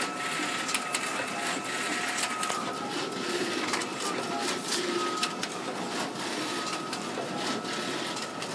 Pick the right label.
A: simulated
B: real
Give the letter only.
B